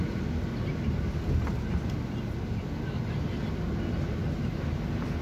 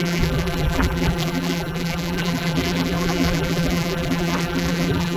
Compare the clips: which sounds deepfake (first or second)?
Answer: second